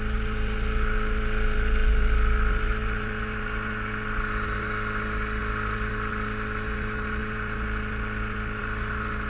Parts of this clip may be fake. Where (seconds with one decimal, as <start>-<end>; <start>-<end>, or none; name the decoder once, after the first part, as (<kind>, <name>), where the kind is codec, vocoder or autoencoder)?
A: none